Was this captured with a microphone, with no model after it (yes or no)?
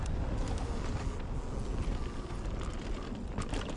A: yes